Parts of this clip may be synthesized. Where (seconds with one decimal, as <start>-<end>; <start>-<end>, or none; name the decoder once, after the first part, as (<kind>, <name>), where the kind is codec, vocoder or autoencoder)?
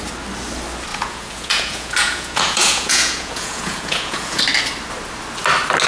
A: 0.9-4.4 (vocoder, Vocos)